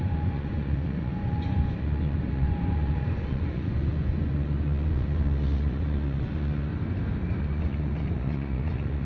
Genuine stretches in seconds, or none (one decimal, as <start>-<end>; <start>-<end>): 6.7-7.4

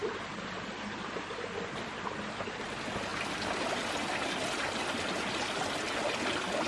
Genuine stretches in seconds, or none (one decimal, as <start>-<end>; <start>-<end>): 0.0-6.7